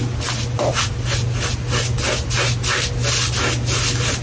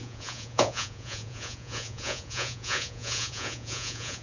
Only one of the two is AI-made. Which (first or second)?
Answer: second